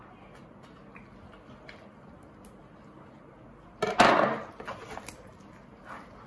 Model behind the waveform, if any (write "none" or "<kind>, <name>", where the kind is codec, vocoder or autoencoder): none